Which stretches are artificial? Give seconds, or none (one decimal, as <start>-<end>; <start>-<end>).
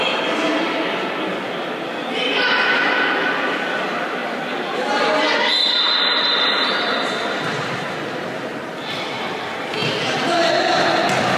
9.8-10.5